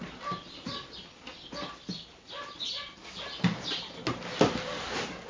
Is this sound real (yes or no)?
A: yes